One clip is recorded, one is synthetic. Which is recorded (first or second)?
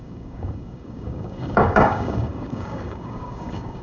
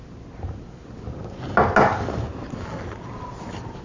second